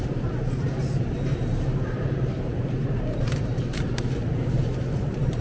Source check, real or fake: fake